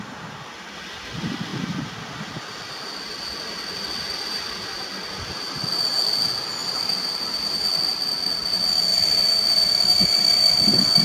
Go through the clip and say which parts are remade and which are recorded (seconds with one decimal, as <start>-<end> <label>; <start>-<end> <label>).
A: 0.0-11.0 recorded